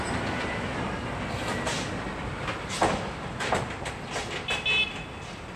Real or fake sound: real